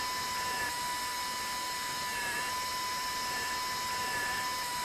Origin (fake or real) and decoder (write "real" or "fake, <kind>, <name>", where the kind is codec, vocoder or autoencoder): real